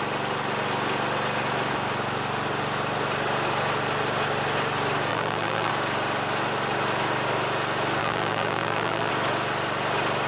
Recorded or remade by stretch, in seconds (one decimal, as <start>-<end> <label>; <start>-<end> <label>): 0.0-5.1 recorded; 5.1-5.7 remade; 5.7-8.0 recorded; 8.0-9.1 remade; 9.1-10.3 recorded